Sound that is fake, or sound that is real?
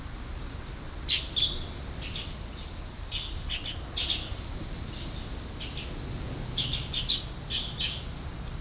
real